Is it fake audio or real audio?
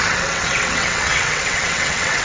fake